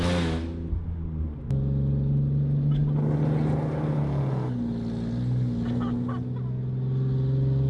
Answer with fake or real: real